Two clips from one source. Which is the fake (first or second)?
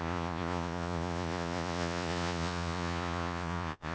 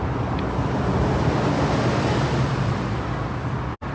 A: first